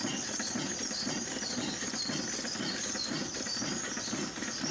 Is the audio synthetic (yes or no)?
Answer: no